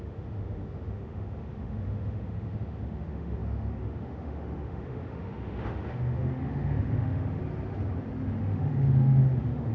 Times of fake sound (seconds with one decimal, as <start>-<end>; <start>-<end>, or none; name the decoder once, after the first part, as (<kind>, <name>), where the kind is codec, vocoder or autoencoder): 0.0-7.4 (autoencoder, DAC-VAE); 8.4-9.7